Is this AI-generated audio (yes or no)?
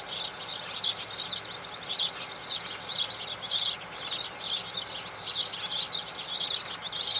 no